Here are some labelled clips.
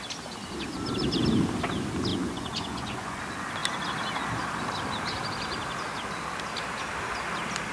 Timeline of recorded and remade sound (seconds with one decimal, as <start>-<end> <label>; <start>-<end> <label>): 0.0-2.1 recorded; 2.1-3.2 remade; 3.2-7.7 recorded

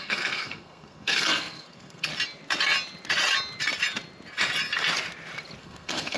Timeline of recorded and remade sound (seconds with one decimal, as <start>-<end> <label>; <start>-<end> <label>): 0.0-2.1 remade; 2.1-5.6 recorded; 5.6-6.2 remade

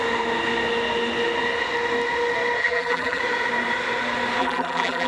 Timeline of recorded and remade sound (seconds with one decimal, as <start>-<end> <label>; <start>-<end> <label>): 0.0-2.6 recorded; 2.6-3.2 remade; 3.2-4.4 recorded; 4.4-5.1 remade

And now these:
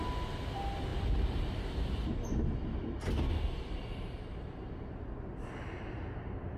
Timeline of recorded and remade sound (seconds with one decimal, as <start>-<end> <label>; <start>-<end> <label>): 0.0-6.6 recorded

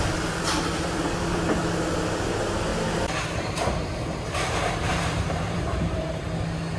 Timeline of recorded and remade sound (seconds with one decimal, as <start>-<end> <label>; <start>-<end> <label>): 0.0-2.7 recorded; 2.7-6.2 remade; 6.2-6.8 recorded

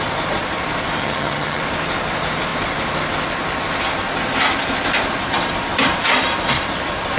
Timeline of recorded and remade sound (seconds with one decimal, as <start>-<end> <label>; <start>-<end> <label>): 0.0-1.0 recorded; 1.0-1.6 remade; 1.6-7.2 recorded

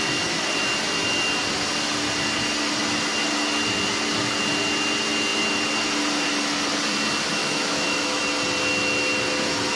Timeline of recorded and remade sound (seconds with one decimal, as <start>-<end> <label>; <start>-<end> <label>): 0.0-7.4 recorded; 7.4-8.2 remade; 8.2-9.8 recorded

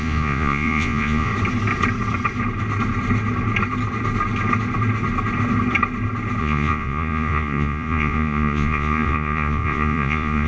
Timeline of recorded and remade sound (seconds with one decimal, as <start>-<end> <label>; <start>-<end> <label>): 0.0-1.3 remade; 1.3-6.4 recorded; 6.4-10.5 remade